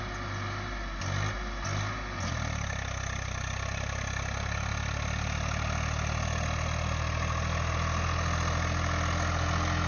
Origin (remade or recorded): recorded